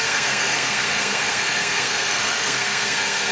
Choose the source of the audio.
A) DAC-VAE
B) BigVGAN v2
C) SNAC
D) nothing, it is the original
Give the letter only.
C